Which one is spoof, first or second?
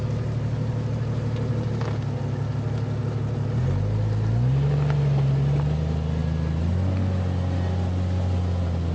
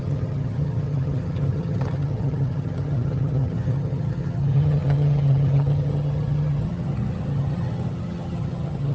second